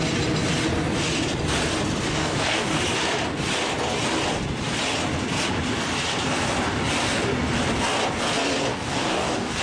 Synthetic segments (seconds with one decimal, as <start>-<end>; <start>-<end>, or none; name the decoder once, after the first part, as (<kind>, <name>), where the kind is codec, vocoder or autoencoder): 2.1-2.8 (codec, DAC); 8.7-9.6